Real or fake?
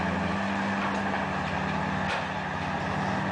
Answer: real